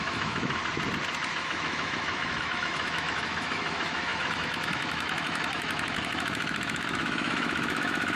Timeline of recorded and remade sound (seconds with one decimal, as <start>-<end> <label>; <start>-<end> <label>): 0.0-0.6 remade; 0.6-1.3 recorded; 1.3-8.2 remade